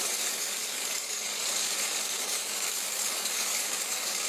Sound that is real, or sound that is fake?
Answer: fake